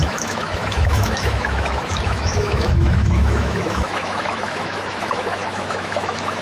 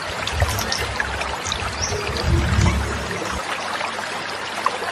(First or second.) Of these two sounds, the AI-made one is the first